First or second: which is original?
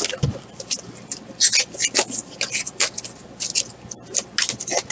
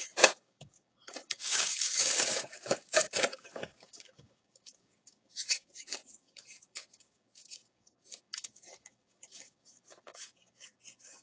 first